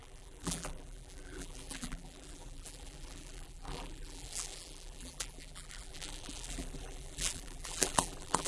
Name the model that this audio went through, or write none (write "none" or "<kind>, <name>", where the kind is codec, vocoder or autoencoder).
vocoder, BigVGAN v2